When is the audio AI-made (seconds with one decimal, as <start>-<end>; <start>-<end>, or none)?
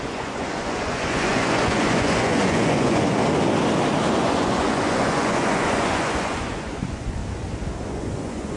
0.0-3.2; 4.1-7.2; 7.8-8.6